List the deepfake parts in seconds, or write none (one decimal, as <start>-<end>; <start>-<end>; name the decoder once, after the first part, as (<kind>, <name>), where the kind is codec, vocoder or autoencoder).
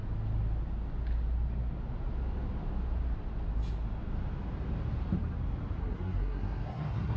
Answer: 5.8-7.2 (codec, SNAC)